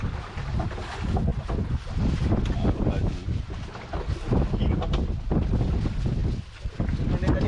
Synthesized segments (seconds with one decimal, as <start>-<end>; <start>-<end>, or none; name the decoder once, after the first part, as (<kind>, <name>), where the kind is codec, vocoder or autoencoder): 6.2-6.7 (vocoder, BigVGAN v2)